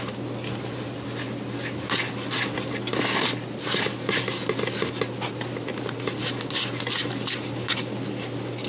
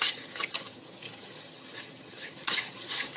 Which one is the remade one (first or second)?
second